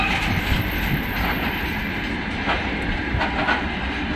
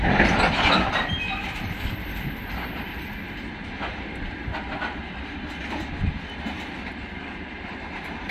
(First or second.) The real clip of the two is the first